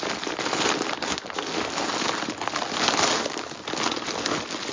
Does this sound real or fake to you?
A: real